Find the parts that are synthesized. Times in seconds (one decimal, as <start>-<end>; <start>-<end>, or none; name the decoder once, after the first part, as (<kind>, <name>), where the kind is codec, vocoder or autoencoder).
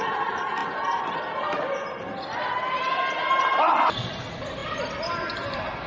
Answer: none